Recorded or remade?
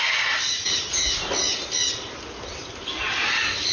recorded